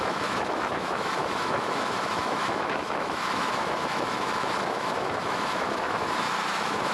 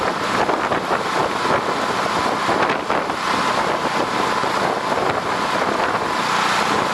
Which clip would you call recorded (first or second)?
second